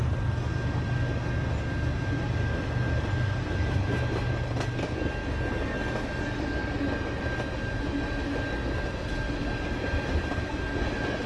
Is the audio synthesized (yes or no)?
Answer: no